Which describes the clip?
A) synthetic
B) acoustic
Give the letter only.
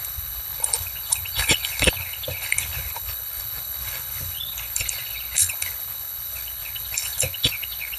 A